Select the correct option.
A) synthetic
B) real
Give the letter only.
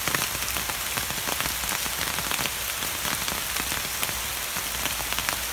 B